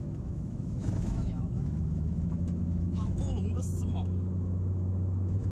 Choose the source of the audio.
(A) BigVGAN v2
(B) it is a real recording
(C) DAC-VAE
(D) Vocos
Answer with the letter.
C